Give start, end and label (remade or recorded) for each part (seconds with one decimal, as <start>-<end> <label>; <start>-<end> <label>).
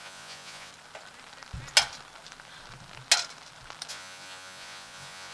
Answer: 0.0-0.7 remade; 0.7-3.9 recorded; 3.9-5.3 remade